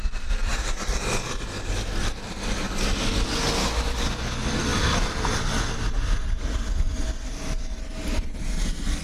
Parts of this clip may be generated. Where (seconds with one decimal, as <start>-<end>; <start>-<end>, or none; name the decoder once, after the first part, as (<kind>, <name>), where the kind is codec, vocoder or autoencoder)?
4.7-5.4 (vocoder, BigVGAN v2)